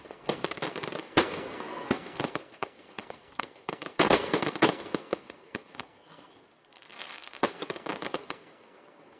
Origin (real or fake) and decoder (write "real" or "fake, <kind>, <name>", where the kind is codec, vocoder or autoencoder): fake, codec, SNAC